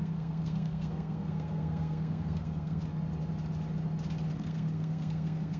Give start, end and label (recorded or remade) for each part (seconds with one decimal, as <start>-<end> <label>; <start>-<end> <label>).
0.0-2.8 remade; 2.8-4.3 recorded; 4.3-5.6 remade